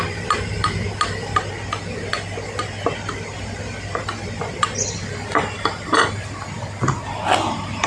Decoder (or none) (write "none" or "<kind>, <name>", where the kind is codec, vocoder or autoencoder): none